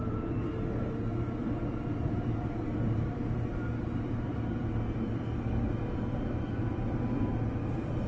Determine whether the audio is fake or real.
fake